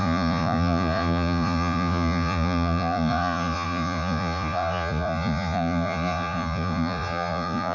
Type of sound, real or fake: fake